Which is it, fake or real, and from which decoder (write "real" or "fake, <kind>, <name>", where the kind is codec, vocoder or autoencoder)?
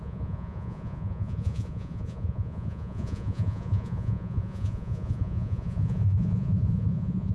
fake, vocoder, Vocos